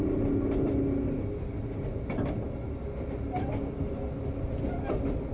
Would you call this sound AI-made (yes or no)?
no